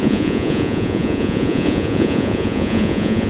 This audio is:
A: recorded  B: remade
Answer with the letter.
B